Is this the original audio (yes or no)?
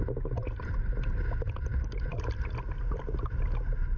yes